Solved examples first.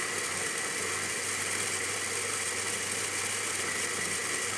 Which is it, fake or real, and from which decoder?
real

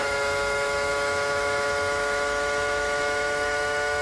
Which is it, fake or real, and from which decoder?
fake, autoencoder, DAC-VAE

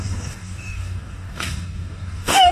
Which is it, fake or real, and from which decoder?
fake, codec, DAC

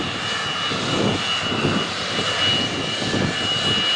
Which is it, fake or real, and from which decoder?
real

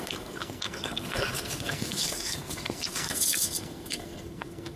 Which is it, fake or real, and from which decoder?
fake, codec, SNAC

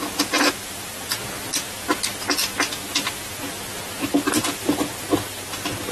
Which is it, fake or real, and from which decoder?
real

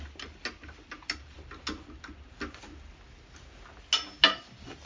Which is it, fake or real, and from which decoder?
real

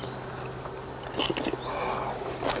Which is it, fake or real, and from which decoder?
real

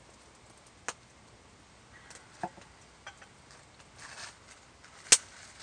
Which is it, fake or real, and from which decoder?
real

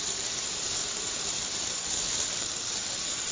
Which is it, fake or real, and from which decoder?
fake, vocoder, BigVGAN v2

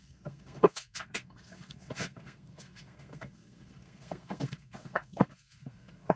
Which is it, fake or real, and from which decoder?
fake, codec, SNAC